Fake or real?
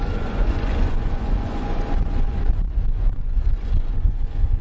fake